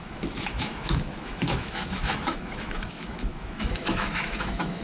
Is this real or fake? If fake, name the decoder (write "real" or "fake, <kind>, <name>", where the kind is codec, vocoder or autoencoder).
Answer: fake, autoencoder, DAC-VAE